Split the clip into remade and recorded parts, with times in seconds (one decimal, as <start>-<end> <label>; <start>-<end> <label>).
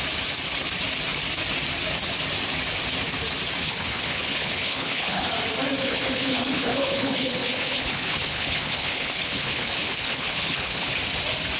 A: 0.0-3.6 recorded; 3.6-5.3 remade; 5.3-5.8 recorded; 5.8-10.9 remade; 10.9-11.6 recorded